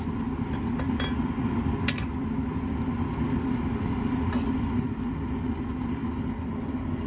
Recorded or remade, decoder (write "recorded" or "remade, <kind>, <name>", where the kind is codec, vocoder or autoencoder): recorded